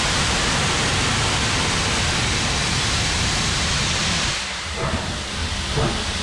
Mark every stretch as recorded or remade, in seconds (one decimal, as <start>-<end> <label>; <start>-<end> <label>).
0.0-6.2 recorded